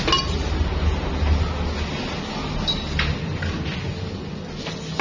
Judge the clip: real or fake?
real